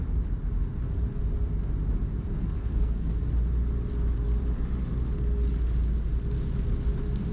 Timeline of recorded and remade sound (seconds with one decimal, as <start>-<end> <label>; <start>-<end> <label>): 0.0-2.3 recorded; 2.3-3.2 remade; 3.2-7.3 recorded